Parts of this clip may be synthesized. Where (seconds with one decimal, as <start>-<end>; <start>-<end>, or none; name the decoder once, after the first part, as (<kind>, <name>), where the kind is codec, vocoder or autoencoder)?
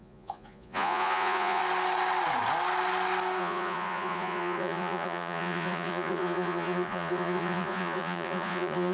0.0-1.6 (vocoder, Vocos); 3.4-8.9